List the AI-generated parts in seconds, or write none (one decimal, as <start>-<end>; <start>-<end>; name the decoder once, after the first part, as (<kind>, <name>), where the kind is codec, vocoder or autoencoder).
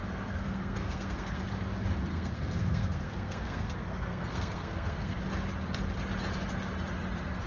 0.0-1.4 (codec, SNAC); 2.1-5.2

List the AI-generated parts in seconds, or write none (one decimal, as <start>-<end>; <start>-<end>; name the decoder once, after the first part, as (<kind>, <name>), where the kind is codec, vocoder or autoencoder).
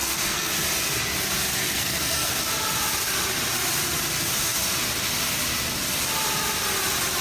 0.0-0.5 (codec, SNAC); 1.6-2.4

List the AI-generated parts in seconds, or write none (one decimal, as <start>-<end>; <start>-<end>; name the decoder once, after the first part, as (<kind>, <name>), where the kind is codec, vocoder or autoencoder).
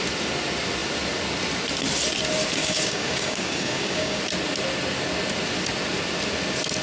2.6-4.2 (codec, DAC)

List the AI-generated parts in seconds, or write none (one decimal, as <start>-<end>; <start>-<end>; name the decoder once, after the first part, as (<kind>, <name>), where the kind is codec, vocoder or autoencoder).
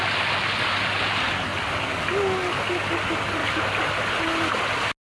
none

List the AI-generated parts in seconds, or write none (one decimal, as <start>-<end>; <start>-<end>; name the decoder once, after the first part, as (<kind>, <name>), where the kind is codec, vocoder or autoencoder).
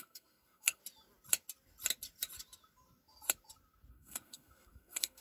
0.0-0.8 (codec, SNAC); 3.9-5.2